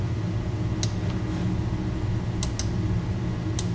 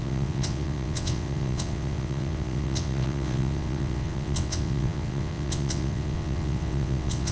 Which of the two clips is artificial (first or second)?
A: second